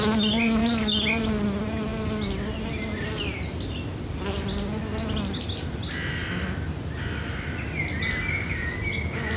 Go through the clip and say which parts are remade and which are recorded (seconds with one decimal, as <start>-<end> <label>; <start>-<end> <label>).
0.0-9.4 recorded